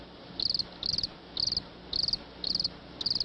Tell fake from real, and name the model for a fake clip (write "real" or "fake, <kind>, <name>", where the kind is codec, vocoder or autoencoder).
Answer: real